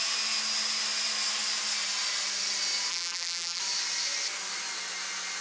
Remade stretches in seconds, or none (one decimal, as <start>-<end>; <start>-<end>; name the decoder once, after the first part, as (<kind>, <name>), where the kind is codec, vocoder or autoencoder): 2.9-3.6 (vocoder, BigVGAN v2)